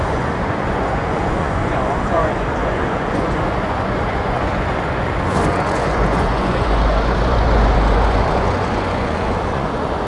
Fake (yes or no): yes